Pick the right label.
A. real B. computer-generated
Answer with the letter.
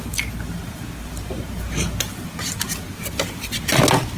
A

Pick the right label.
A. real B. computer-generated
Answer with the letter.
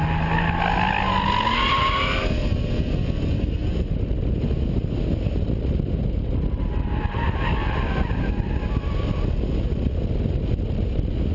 A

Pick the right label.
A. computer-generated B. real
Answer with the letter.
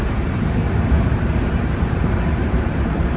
A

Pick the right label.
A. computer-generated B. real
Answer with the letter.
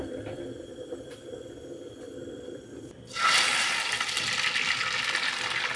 B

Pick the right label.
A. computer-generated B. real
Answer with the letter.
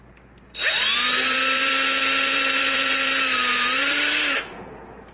A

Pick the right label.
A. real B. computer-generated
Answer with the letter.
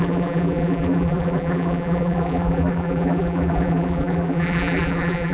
B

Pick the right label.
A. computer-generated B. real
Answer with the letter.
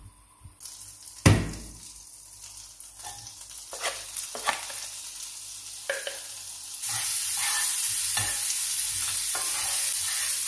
B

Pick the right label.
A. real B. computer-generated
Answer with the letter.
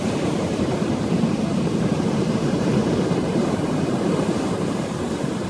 B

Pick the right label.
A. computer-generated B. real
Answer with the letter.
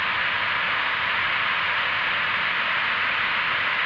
B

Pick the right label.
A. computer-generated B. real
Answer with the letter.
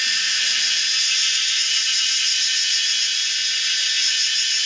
B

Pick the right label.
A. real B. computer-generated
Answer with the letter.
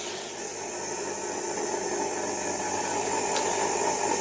A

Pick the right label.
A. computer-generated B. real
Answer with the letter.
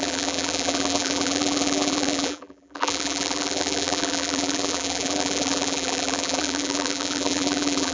A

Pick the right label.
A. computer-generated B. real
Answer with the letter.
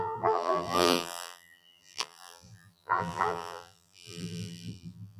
A